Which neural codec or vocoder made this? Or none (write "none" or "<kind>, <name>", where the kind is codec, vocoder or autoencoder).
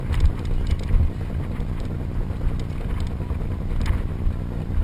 none